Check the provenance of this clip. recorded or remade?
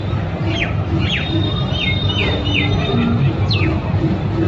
recorded